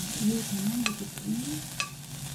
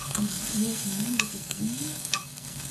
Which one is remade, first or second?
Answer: second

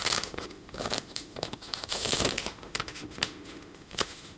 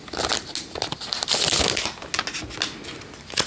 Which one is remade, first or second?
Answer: first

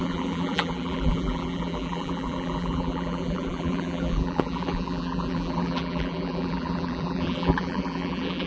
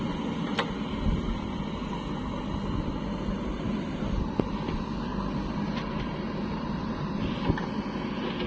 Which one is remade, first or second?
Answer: first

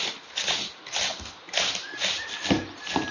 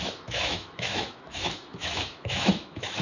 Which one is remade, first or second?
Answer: second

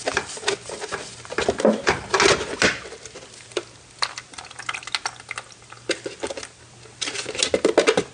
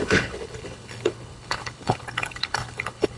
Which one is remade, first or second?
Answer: second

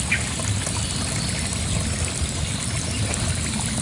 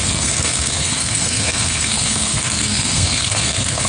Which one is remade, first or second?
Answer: second